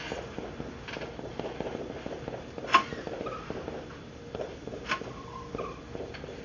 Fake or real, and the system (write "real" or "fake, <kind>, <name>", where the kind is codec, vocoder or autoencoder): real